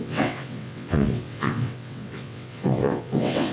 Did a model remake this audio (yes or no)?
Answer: yes